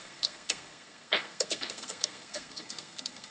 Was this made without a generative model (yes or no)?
no